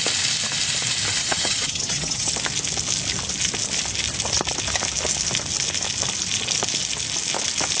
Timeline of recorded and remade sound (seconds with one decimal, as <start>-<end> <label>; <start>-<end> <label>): 0.0-1.2 recorded; 1.2-2.3 remade; 2.3-7.8 recorded